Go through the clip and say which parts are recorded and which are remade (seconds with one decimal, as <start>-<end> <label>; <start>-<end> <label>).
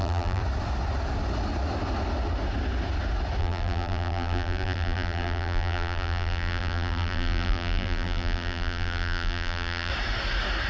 0.0-0.4 remade; 0.4-3.4 recorded; 3.4-9.9 remade; 9.9-10.7 recorded